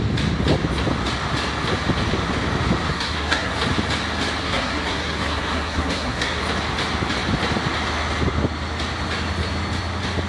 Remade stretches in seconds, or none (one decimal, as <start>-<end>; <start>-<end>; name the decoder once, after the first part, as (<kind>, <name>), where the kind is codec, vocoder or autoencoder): 2.9-3.5 (codec, SNAC); 4.4-6.4